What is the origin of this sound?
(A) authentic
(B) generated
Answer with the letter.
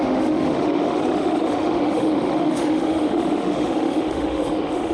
B